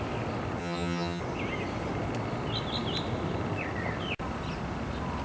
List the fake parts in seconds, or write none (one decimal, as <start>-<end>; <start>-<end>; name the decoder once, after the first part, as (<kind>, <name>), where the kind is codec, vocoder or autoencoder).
0.6-1.2 (vocoder, HiFi-GAN)